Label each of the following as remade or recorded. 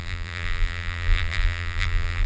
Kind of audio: remade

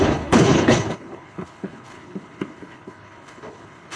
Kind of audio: remade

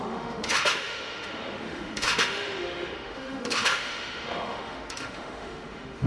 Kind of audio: remade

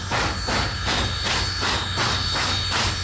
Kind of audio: recorded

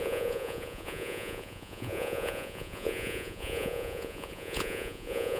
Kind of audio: remade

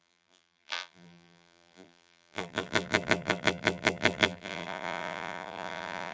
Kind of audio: remade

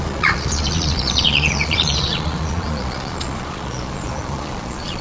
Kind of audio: remade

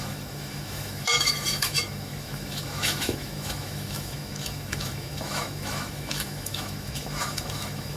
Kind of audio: remade